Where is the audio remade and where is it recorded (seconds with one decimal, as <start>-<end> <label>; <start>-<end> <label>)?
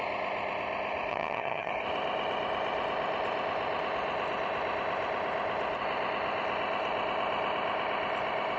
0.0-1.1 recorded; 1.1-1.7 remade; 1.7-8.6 recorded